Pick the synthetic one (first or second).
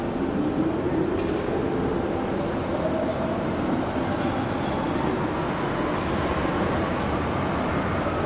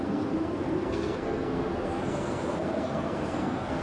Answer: second